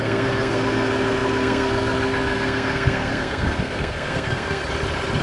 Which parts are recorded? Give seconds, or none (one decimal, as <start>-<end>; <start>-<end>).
4.6-5.2